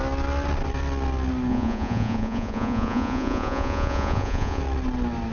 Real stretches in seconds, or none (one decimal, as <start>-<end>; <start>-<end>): 0.0-1.5; 4.6-5.3